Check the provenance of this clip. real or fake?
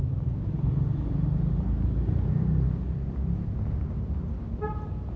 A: real